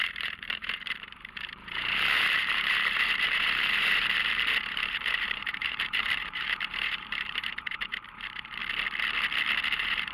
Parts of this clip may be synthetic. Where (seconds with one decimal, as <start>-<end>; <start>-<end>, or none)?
0.0-8.6; 9.7-10.1